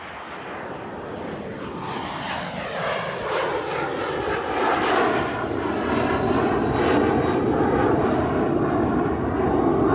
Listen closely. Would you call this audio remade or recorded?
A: recorded